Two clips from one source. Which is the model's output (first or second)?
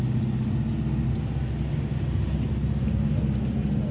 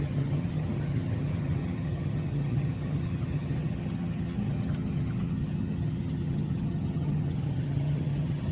second